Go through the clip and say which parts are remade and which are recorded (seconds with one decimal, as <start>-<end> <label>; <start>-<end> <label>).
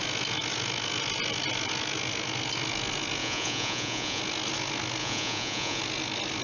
0.0-3.2 recorded; 3.2-4.2 remade; 4.2-5.0 recorded; 5.0-5.8 remade; 5.8-6.4 recorded